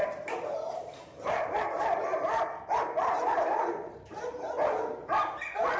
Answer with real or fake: real